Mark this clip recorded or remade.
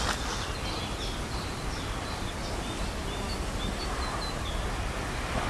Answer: recorded